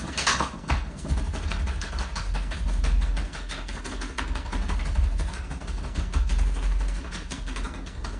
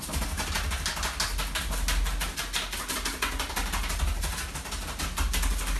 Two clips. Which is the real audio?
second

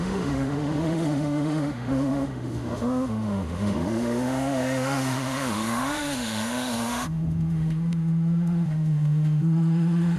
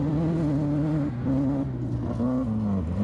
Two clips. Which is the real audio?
second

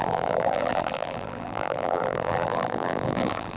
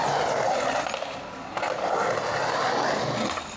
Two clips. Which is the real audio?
second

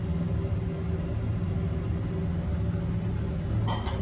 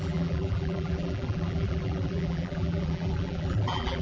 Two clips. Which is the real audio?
first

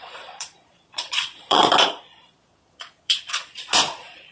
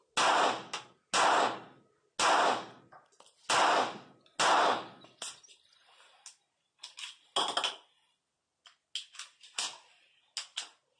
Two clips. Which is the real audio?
second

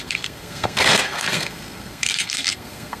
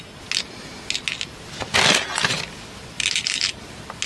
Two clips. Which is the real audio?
second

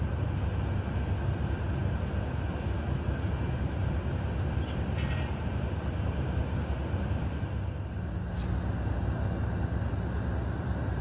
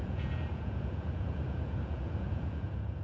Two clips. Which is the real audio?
first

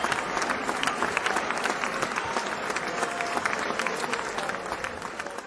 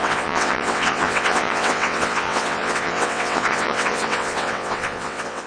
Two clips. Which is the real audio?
first